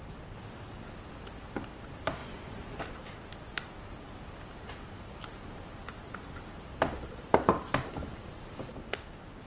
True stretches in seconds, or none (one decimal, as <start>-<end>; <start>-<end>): 0.0-2.2; 2.8-9.5